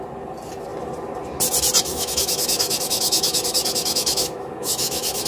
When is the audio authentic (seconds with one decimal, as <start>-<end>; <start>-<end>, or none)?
0.0-1.9